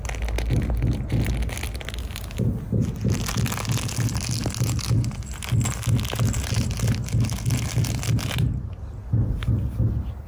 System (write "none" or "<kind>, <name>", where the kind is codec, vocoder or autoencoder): none